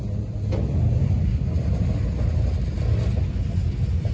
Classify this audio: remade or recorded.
recorded